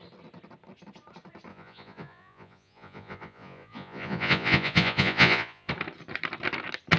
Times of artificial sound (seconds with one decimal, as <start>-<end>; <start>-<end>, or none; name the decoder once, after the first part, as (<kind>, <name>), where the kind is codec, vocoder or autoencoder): 1.5-5.7 (vocoder, Vocos)